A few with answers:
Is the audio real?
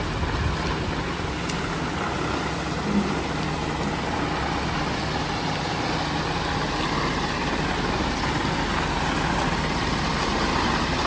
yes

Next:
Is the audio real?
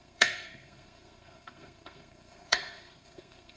no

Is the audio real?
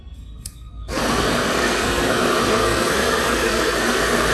no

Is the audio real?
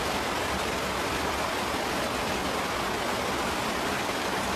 yes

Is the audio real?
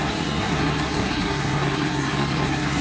no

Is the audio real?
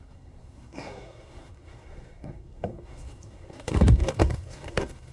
no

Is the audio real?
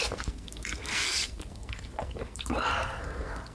no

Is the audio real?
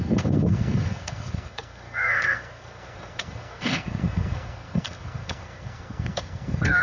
no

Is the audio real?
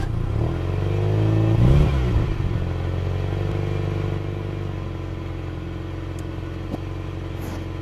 yes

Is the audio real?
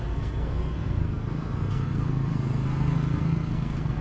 no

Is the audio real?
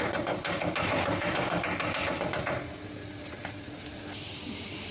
yes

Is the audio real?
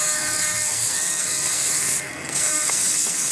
no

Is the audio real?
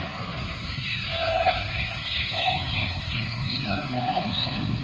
no